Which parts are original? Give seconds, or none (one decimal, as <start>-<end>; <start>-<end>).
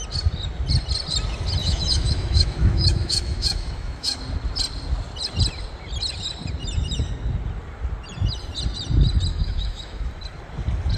0.0-1.6; 4.2-9.3; 10.1-11.0